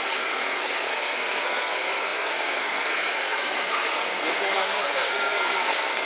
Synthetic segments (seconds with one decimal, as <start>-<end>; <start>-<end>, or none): 0.0-6.1